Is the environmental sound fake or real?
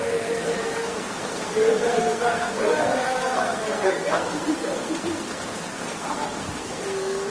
fake